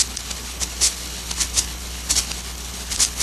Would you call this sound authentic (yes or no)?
no